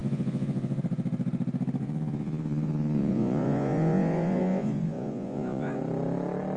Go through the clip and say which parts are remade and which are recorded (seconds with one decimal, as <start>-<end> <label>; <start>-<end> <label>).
0.0-0.8 remade; 0.8-1.8 recorded; 1.8-5.8 remade; 5.8-6.6 recorded

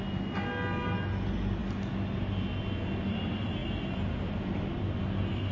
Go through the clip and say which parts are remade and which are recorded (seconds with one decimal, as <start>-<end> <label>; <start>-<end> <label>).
0.0-5.5 recorded

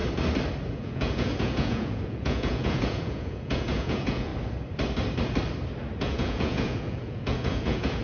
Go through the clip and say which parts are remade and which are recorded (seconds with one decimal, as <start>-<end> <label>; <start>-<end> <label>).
0.0-0.7 recorded; 0.7-4.3 remade; 4.3-6.0 recorded; 6.0-8.0 remade

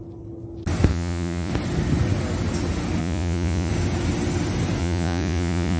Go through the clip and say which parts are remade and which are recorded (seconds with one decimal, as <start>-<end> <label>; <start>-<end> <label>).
0.0-0.9 recorded; 0.9-1.5 remade; 1.5-3.0 recorded; 3.0-3.7 remade; 3.7-4.8 recorded; 4.8-5.8 remade

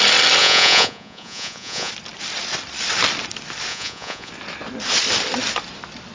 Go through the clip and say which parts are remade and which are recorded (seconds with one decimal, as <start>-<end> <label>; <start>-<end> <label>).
0.0-0.4 recorded; 0.4-1.9 remade; 1.9-3.7 recorded; 3.7-4.3 remade; 4.3-6.1 recorded

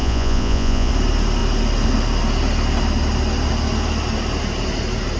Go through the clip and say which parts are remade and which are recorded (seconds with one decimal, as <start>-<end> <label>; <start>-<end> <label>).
0.0-0.9 remade; 0.9-5.2 recorded